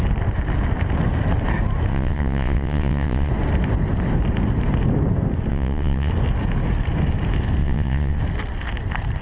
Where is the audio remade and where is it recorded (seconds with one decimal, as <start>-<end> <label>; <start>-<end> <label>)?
0.0-1.9 recorded; 1.9-3.3 remade; 3.3-5.5 recorded; 5.5-6.1 remade; 6.1-7.6 recorded; 7.6-8.2 remade; 8.2-9.2 recorded

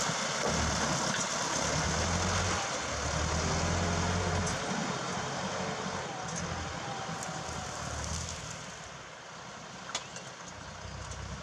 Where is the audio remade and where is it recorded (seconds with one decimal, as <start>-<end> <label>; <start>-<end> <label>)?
0.0-11.4 recorded

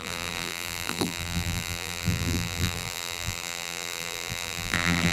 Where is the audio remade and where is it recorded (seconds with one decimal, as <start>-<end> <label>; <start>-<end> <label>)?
0.0-5.1 remade

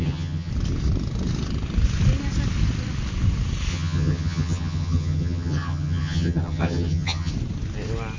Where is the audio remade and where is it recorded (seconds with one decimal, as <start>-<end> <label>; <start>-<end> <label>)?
0.0-0.5 remade; 0.5-3.7 recorded; 3.7-7.3 remade; 7.3-8.2 recorded

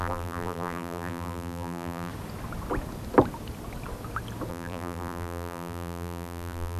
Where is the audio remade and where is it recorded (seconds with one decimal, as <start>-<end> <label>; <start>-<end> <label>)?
0.0-2.1 remade; 2.1-4.5 recorded; 4.5-6.8 remade

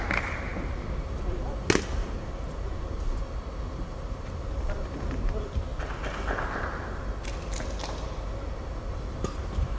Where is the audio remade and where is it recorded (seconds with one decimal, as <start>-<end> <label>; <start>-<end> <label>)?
0.0-0.5 remade; 0.5-3.9 recorded; 3.9-5.7 remade; 5.7-8.8 recorded; 8.8-9.8 remade

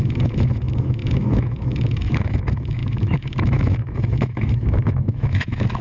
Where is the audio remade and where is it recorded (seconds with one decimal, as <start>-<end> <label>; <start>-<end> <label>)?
0.0-5.8 remade